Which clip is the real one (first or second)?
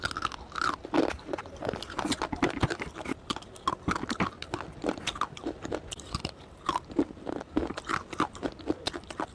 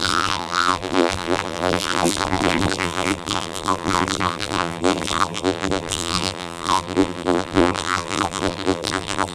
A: first